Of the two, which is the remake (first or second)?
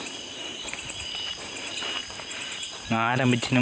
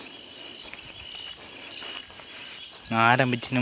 first